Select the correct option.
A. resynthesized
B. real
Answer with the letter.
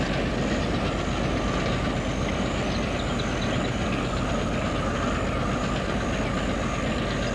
B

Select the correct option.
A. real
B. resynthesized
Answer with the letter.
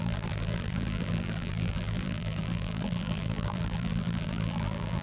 B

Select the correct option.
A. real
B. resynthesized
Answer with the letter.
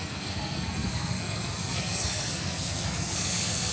B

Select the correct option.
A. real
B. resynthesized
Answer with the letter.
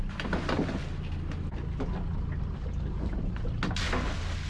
A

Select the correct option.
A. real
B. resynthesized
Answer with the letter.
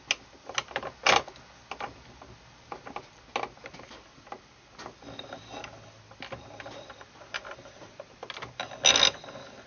A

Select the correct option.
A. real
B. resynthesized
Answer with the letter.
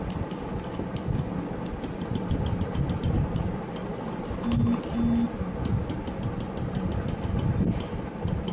A